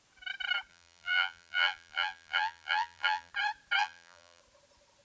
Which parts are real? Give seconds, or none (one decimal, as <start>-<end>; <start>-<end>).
0.0-0.7; 3.3-3.8; 4.4-5.0